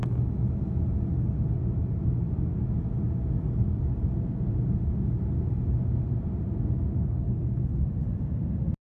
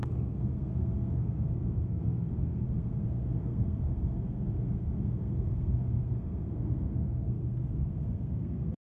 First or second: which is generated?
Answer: second